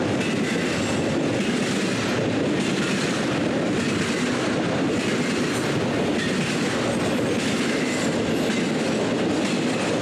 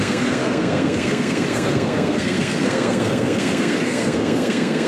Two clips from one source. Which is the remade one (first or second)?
second